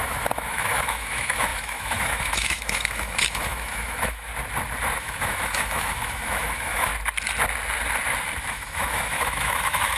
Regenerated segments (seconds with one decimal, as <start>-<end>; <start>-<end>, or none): 0.0-4.3; 5.0-6.9; 8.4-10.0